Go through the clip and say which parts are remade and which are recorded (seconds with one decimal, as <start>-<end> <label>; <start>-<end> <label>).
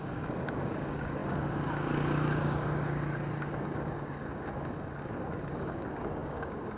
0.0-6.8 remade